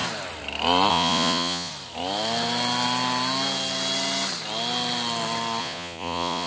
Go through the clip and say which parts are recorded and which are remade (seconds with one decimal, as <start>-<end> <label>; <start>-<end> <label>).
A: 0.0-0.9 recorded; 0.9-1.7 remade; 1.7-5.6 recorded; 5.6-6.5 remade